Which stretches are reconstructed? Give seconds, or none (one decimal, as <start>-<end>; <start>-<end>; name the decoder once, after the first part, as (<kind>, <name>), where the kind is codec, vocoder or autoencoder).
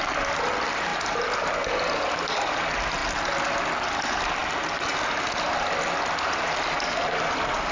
none